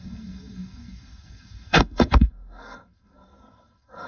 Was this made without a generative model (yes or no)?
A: no